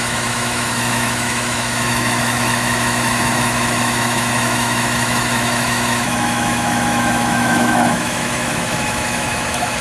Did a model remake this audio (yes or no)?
yes